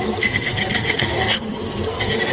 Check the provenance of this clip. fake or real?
fake